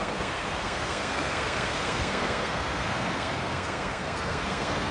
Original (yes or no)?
no